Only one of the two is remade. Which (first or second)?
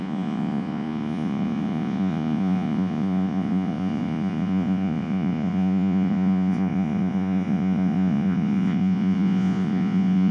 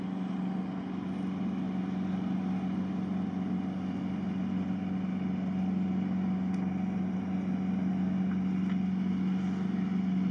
first